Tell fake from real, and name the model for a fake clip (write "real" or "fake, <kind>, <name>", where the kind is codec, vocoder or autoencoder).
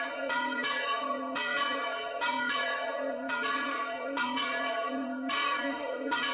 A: fake, vocoder, Vocos